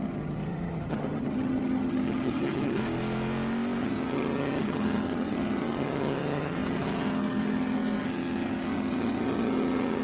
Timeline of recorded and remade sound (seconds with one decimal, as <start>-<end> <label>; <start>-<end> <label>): 0.0-2.8 remade; 2.8-3.8 recorded; 3.8-10.0 remade